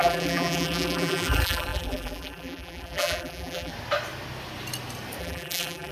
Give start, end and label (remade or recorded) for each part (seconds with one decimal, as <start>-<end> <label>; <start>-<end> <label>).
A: 0.0-3.7 remade; 3.7-5.2 recorded; 5.2-5.9 remade